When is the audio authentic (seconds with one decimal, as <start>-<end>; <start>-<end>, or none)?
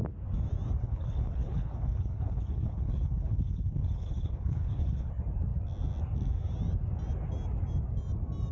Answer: 0.0-0.8; 5.1-8.5